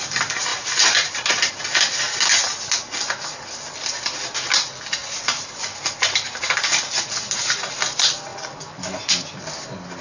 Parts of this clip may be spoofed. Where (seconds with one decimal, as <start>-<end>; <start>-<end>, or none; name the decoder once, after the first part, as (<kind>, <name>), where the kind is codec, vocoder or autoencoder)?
0.5-1.5 (vocoder, BigVGAN v2); 5.0-6.4